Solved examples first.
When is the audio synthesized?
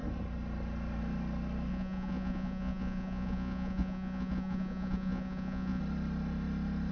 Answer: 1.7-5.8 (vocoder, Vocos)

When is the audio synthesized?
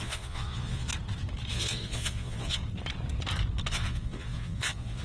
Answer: 0.0-0.9 (vocoder, Vocos); 1.5-2.6; 3.7-5.0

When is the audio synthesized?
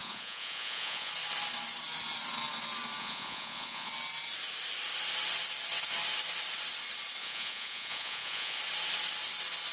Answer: 0.0-1.1 (vocoder, Vocos); 3.0-3.9; 7.2-8.6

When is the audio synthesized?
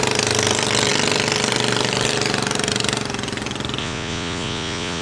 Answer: 3.8-5.0 (vocoder, Vocos)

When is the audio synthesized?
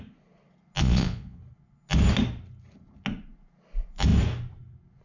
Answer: 0.8-1.4 (vocoder, Vocos)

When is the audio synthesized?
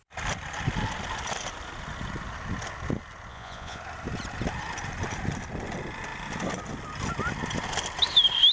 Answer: 3.3-3.8 (vocoder, Vocos)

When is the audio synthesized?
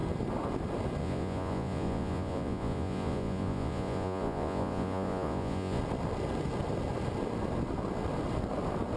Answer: 1.0-5.8 (vocoder, Vocos)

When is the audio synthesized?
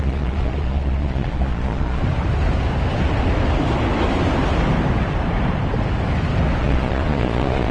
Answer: 0.0-2.0 (vocoder, Vocos); 6.6-7.7